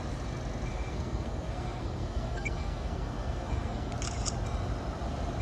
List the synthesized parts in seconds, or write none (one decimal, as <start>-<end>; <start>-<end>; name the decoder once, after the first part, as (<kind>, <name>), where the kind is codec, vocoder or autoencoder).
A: 0.7-3.9 (codec, SNAC)